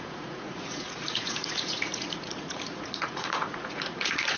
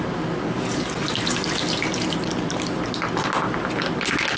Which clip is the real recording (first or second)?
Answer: second